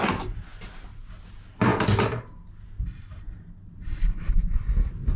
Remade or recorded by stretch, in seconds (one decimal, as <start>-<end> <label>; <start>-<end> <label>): 0.0-5.2 recorded